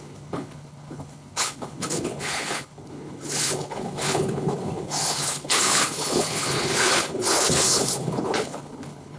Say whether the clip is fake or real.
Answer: fake